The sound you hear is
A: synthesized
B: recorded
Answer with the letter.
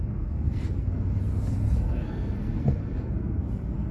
A